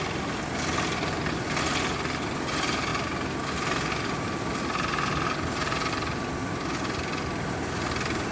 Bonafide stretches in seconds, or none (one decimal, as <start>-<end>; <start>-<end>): 0.0-8.3